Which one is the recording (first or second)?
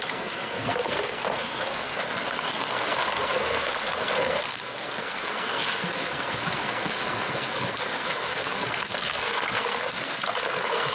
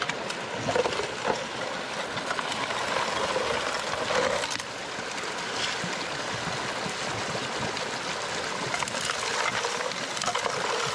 second